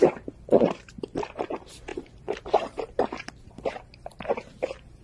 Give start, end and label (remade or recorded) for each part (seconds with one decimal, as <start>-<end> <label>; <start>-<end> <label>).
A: 0.0-5.0 remade